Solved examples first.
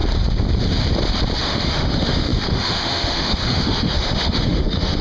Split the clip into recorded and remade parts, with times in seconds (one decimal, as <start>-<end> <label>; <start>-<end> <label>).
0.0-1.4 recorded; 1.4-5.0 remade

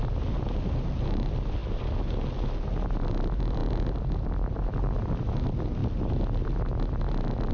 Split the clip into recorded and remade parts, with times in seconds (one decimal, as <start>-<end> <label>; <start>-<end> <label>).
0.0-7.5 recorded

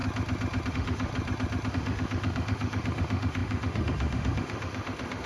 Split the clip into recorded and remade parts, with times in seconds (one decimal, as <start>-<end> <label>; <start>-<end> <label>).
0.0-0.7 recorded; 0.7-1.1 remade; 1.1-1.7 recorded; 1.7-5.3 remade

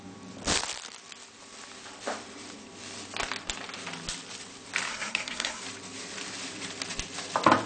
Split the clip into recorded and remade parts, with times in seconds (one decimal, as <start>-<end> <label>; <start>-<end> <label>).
0.0-4.9 recorded; 4.9-5.6 remade; 5.6-7.7 recorded

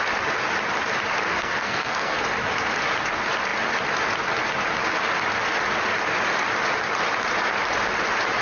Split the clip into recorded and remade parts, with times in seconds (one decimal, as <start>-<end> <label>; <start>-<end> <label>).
0.0-1.3 recorded; 1.3-2.2 remade; 2.2-8.4 recorded

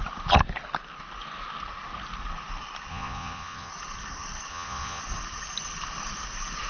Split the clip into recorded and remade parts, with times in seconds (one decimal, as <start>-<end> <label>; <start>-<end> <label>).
0.0-2.9 recorded; 2.9-3.7 remade; 3.7-4.5 recorded; 4.5-5.0 remade; 5.0-6.7 recorded

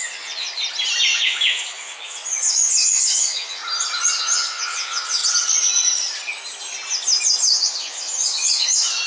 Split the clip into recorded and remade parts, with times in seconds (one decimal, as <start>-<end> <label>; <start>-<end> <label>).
0.0-0.5 remade; 0.5-1.1 recorded; 1.1-3.6 remade; 3.6-4.2 recorded; 4.2-5.2 remade; 5.2-7.5 recorded; 7.5-9.1 remade

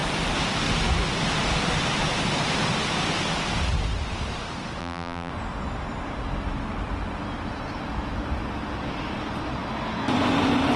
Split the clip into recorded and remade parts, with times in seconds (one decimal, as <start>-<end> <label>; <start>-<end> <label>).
0.0-4.8 recorded; 4.8-5.3 remade; 5.3-10.8 recorded